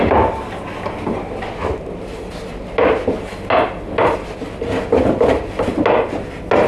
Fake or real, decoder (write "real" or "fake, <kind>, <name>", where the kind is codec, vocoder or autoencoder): real